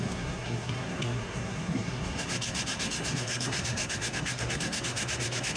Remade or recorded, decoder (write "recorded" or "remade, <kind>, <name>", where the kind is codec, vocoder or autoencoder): remade, codec, SNAC